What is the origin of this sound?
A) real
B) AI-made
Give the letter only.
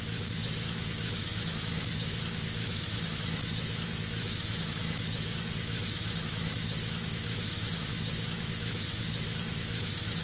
B